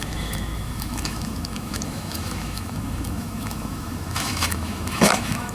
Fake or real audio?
fake